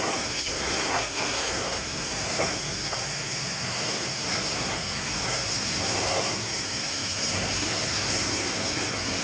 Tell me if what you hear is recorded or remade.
remade